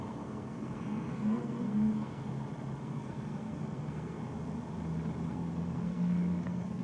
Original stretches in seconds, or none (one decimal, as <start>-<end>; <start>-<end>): 2.3-2.8; 4.2-5.3